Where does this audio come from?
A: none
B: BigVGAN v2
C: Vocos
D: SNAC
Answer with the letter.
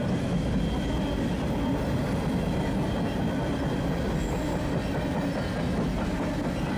A